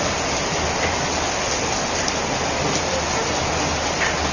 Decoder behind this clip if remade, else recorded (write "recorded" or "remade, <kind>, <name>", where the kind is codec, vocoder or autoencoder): recorded